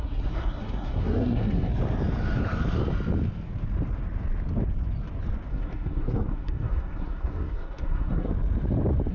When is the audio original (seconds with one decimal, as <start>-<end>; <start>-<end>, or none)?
1.7-5.5; 8.3-9.1